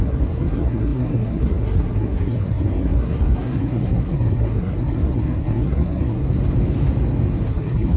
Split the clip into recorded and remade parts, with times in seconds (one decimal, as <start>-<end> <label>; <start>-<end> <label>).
0.0-6.4 remade; 6.4-7.5 recorded; 7.5-8.0 remade